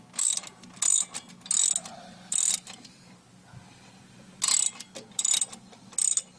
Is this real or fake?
real